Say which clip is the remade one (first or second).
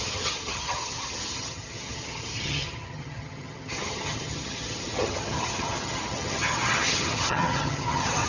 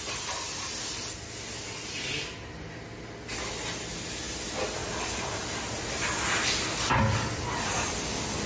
first